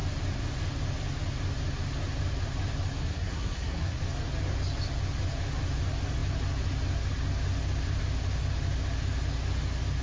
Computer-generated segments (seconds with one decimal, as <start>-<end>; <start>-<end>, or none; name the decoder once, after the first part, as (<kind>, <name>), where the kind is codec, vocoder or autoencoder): 3.0-4.0 (codec, SNAC)